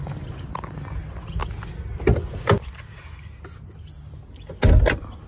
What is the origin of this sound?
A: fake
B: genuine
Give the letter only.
B